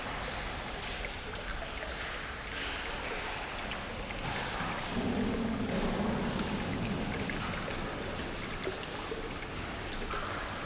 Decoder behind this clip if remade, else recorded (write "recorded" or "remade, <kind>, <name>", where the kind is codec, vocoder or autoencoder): recorded